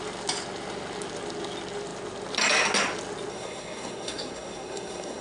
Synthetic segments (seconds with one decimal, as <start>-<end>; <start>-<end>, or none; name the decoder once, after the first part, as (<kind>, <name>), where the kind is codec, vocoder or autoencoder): 3.3-5.2 (codec, SNAC)